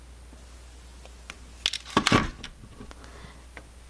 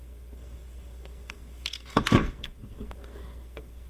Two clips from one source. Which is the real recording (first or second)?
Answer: first